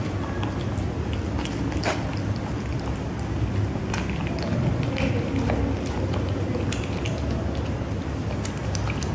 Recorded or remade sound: recorded